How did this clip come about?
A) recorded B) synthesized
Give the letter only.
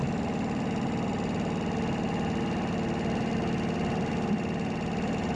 A